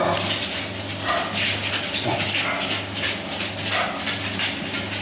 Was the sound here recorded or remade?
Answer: recorded